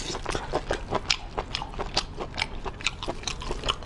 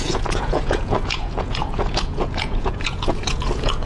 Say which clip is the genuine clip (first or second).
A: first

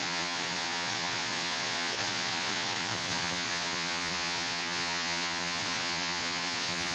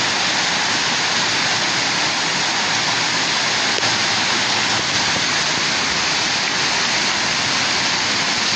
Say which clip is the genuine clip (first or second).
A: second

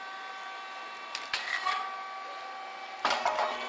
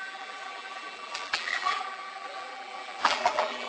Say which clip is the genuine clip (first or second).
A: first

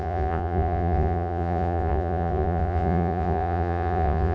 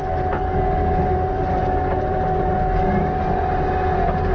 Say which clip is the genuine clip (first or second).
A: second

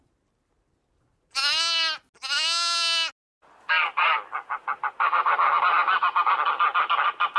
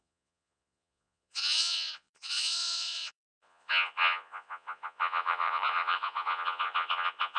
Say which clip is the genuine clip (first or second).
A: first